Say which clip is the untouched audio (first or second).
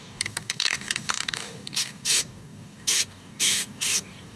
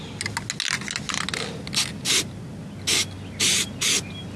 second